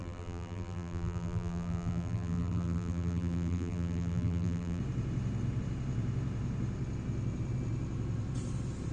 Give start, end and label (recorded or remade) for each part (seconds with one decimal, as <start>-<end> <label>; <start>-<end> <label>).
0.0-4.8 remade; 4.8-8.9 recorded